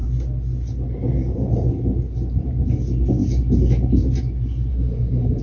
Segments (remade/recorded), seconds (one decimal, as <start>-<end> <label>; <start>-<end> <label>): 0.0-4.7 recorded; 4.7-5.4 remade